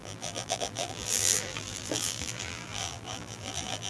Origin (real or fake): fake